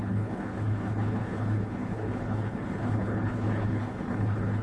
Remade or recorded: remade